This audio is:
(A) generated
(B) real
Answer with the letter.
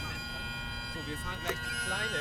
B